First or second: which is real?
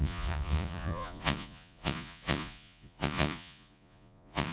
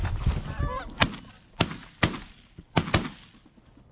second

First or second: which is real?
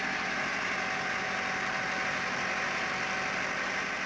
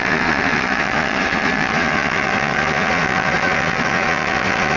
first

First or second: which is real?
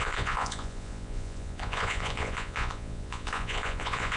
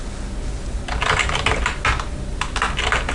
second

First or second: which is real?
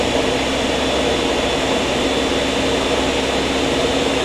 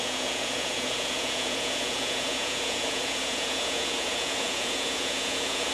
first